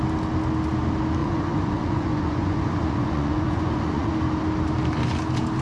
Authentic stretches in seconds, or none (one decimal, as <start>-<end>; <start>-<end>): 0.0-1.2; 4.1-5.6